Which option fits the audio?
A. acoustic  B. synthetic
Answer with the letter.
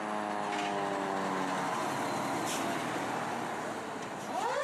A